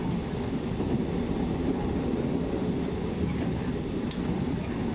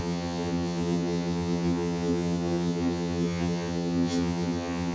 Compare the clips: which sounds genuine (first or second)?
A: first